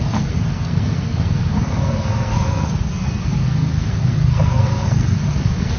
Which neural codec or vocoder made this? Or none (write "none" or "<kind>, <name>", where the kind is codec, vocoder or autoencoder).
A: codec, SNAC